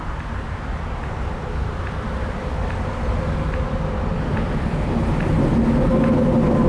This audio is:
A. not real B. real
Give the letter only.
B